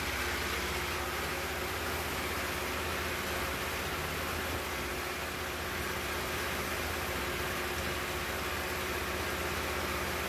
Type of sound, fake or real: real